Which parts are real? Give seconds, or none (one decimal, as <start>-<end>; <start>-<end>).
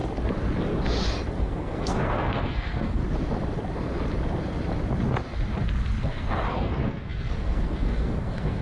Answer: 0.0-1.4; 3.0-6.0